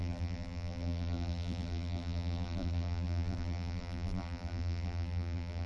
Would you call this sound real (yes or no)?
no